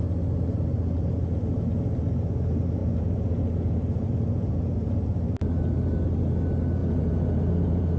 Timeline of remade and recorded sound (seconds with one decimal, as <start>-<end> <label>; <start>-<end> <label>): 0.0-6.8 recorded; 6.8-8.0 remade